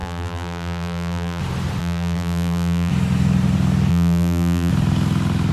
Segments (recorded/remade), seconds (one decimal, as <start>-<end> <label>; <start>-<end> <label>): 0.0-1.4 remade; 1.4-1.8 recorded; 1.8-2.9 remade; 2.9-3.9 recorded; 3.9-4.7 remade; 4.7-5.5 recorded